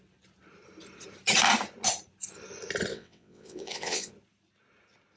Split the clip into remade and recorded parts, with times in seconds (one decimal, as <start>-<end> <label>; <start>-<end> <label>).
0.0-2.9 recorded; 2.9-4.1 remade; 4.1-5.2 recorded